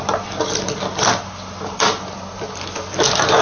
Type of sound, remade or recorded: recorded